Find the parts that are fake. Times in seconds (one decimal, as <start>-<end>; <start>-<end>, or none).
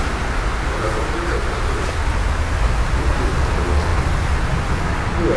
none